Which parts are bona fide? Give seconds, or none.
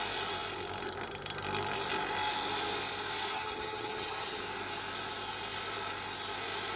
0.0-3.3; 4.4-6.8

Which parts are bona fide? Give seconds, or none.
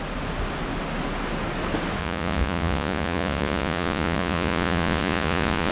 0.0-2.0